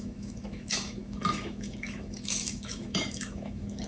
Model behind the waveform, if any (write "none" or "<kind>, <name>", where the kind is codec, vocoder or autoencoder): autoencoder, DAC-VAE